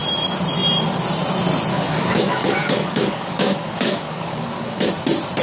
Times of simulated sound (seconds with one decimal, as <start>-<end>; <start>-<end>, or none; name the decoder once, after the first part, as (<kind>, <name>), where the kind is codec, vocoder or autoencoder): 1.7-4.9 (codec, DAC)